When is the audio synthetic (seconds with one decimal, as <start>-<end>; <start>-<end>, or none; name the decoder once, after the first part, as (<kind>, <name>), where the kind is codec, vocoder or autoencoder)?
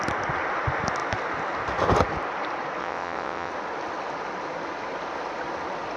2.8-3.5 (vocoder, WaveNeXt)